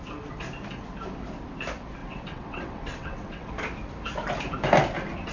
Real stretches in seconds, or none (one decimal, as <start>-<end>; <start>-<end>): 0.0-2.0; 3.5-5.3